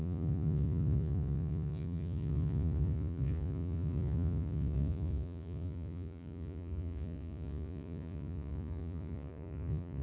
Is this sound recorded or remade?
remade